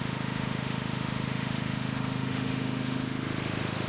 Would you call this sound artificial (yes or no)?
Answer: yes